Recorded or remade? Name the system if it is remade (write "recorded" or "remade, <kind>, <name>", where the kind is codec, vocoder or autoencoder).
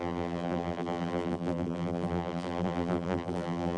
remade, vocoder, BigVGAN v2